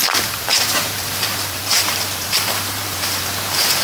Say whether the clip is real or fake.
fake